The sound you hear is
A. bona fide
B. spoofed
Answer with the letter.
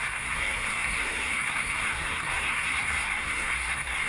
B